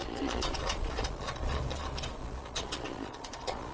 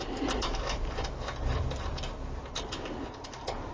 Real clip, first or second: second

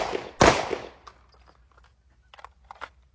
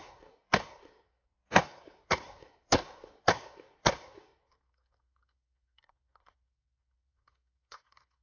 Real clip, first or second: first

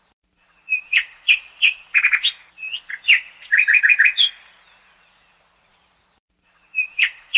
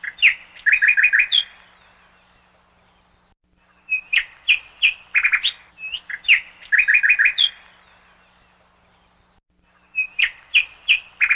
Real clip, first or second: second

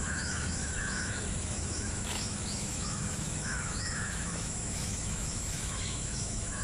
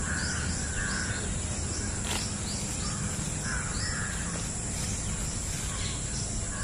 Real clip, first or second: second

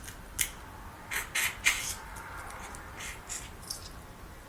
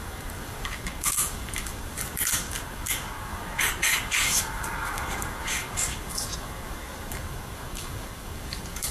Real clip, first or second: first